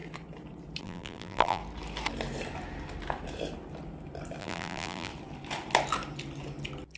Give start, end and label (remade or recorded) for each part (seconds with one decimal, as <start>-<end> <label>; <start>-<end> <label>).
0.0-0.8 recorded; 0.8-1.6 remade; 1.6-4.4 recorded; 4.4-5.1 remade; 5.1-7.0 recorded